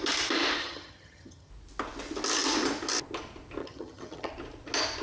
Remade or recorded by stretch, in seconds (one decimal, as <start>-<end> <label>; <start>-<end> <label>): 0.0-0.6 recorded; 0.6-1.5 remade; 1.5-3.6 recorded; 3.6-4.3 remade; 4.3-5.0 recorded